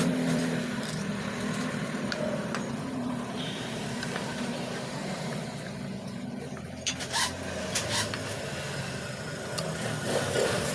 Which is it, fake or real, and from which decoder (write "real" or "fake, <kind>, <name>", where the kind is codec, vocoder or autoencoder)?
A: fake, vocoder, BigVGAN v2